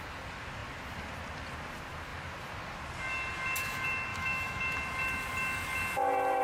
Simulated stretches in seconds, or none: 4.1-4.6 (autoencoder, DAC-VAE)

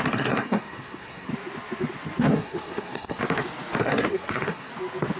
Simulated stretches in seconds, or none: 0.0-1.3 (codec, SNAC); 2.3-3.2; 3.8-4.7

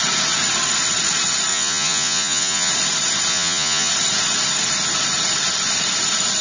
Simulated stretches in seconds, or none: 1.5-2.7 (vocoder, Vocos); 3.3-3.9

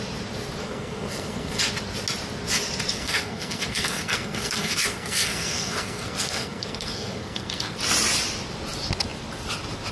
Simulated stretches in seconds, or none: 0.6-1.7 (codec, SNAC); 2.9-7.8

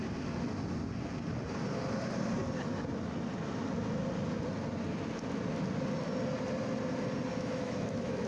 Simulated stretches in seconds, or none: 7.3-8.3 (autoencoder, DAC-VAE)